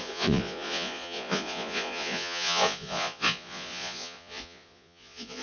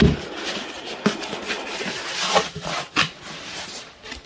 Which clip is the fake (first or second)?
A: first